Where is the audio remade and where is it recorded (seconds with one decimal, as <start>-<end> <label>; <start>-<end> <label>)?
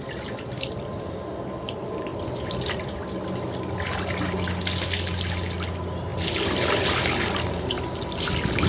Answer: 0.0-8.7 recorded